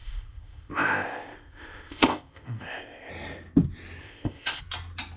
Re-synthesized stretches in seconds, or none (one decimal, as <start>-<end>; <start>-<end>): 0.0-3.1; 4.0-4.6